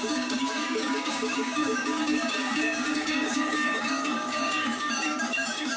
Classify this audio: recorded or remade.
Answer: remade